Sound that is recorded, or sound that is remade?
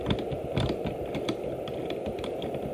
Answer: recorded